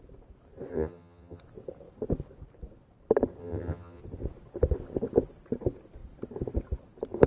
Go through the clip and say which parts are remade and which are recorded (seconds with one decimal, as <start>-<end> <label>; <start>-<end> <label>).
0.0-0.7 recorded; 0.7-1.4 remade; 1.4-3.4 recorded; 3.4-4.0 remade; 4.0-7.3 recorded